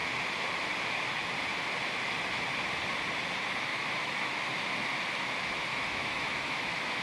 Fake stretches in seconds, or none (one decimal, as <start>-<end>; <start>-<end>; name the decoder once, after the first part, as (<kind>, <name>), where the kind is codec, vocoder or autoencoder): 3.7-4.4 (autoencoder, DAC-VAE); 5.7-7.0